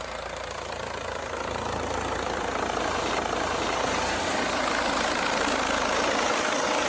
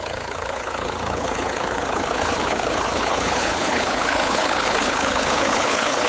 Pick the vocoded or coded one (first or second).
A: second